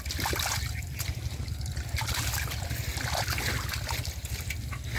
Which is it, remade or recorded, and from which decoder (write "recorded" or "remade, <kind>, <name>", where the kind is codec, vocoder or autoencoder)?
recorded